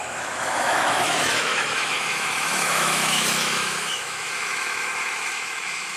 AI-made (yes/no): yes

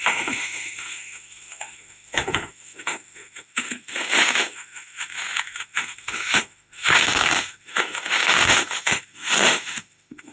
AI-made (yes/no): yes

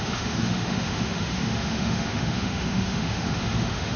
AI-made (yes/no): yes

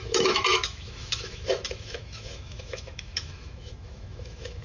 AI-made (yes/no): yes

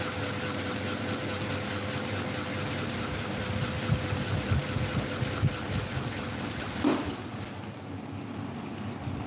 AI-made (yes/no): no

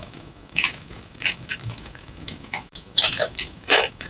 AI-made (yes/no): yes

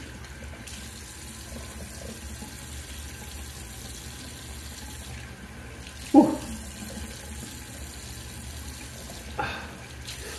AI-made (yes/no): no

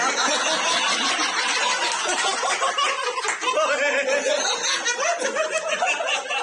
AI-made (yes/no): no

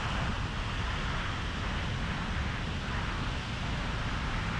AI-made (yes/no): no